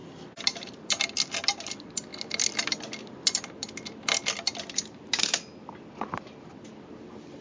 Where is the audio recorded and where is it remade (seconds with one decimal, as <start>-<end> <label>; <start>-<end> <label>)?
0.0-7.4 recorded